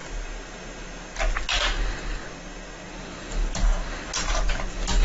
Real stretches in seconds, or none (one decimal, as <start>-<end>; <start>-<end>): 0.0-5.0